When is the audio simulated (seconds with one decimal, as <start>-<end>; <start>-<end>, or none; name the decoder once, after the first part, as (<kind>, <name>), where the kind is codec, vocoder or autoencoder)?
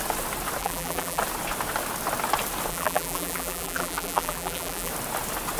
0.6-1.2 (vocoder, BigVGAN v2); 2.7-4.9